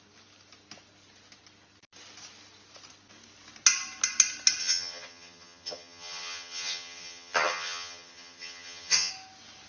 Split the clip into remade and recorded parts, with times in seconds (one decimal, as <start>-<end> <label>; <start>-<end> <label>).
0.0-4.6 recorded; 4.6-9.1 remade; 9.1-9.7 recorded